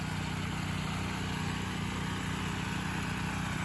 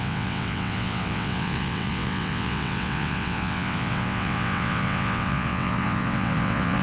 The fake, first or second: second